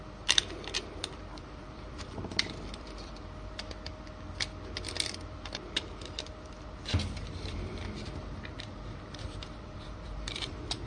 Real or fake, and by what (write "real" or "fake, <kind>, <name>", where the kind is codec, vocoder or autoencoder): fake, vocoder, BigVGAN v2